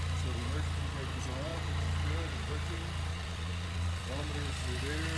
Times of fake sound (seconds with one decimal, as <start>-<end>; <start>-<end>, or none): 3.1-4.1